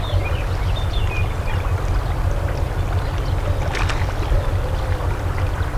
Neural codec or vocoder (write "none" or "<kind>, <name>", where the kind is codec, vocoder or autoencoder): none